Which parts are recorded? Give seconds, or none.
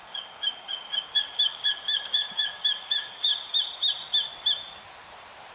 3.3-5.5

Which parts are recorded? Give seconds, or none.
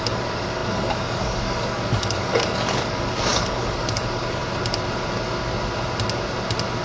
4.4-6.8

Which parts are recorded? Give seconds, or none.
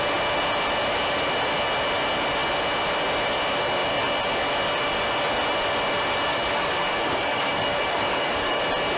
0.0-6.3; 8.6-9.0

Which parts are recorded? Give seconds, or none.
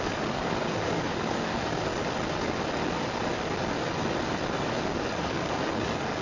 1.9-4.6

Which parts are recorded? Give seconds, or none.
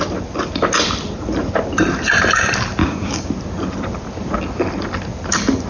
0.0-2.8; 3.3-5.7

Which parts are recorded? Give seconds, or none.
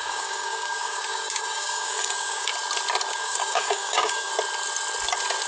2.5-3.1; 4.3-5.5